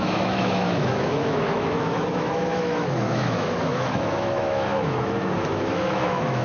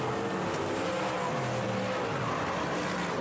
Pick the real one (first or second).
second